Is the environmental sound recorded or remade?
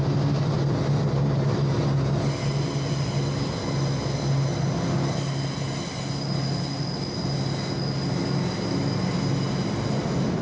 recorded